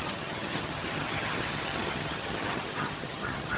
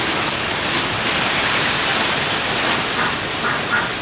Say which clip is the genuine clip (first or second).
second